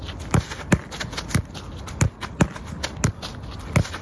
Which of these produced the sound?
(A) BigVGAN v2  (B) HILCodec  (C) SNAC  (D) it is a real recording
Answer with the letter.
D